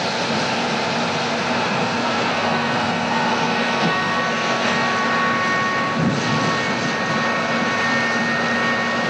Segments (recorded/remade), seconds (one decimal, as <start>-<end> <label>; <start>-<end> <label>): 0.0-1.8 recorded; 1.8-4.7 remade; 4.7-9.1 recorded